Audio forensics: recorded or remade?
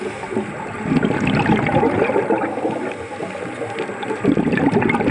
recorded